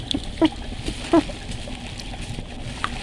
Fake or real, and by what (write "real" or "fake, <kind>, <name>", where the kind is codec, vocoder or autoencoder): real